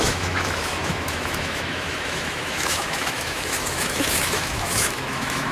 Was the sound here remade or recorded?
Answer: remade